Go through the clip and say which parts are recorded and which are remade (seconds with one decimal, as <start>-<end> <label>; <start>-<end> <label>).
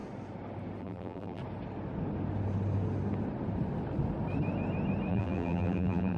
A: 0.0-0.8 recorded; 0.8-1.4 remade; 1.4-5.1 recorded; 5.1-6.2 remade